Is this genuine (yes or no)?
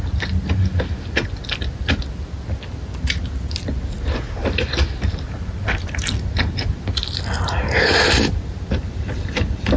yes